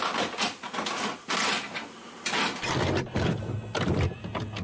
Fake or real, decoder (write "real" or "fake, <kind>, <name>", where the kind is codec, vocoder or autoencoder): real